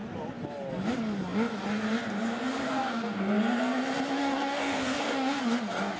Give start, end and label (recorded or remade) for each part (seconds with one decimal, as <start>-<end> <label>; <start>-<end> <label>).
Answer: 0.0-2.6 recorded; 2.6-3.2 remade; 3.2-4.2 recorded; 4.2-5.4 remade; 5.4-6.0 recorded